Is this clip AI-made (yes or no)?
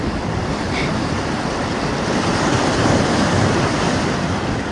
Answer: no